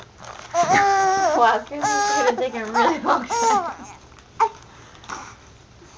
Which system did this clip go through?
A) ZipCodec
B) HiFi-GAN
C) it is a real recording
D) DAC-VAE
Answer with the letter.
C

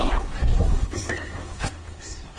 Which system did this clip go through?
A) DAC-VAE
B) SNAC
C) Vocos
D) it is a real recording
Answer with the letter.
B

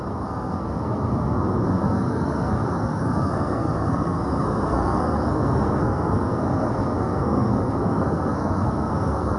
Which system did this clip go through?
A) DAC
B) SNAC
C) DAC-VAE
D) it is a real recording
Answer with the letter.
B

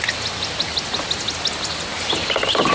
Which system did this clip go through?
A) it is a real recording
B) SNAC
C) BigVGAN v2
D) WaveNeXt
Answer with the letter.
A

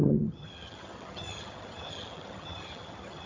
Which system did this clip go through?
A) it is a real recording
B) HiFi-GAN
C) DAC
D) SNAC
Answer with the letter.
B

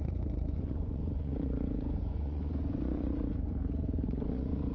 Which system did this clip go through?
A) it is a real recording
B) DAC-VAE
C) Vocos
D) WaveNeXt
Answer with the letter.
C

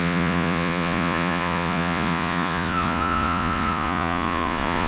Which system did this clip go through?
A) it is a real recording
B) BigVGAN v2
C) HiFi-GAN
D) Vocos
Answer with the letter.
D